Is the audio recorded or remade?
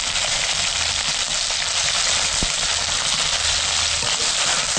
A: recorded